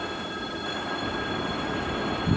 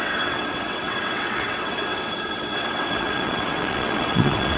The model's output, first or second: second